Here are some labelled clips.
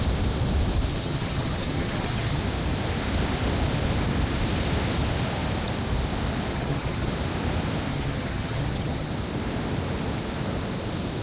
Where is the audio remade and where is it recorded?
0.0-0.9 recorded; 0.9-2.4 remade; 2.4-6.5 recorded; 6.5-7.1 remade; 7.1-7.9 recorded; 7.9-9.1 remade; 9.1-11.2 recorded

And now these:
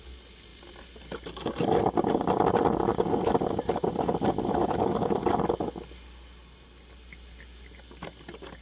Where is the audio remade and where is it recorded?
0.0-8.6 recorded